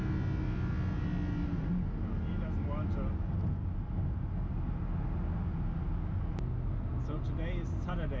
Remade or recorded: recorded